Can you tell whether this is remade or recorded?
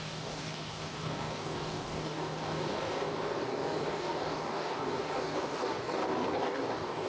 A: remade